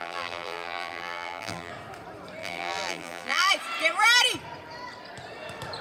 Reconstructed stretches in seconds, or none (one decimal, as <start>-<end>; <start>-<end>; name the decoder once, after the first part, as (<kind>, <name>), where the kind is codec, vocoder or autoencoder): 0.0-1.7 (vocoder, BigVGAN v2); 2.4-3.5